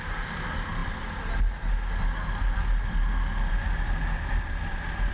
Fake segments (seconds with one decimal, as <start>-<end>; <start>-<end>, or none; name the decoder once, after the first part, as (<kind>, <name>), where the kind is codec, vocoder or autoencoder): none